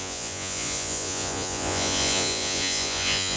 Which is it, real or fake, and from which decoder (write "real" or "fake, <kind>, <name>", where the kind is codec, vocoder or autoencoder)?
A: fake, vocoder, Vocos